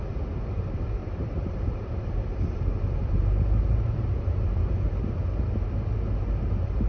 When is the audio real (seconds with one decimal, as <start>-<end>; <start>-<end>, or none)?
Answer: 0.0-1.0; 5.1-6.9